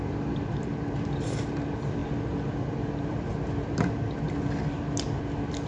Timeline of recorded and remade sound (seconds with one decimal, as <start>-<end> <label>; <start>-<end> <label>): 0.0-5.7 recorded